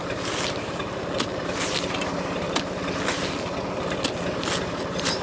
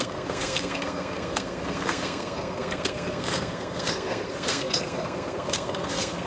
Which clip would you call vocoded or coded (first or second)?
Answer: second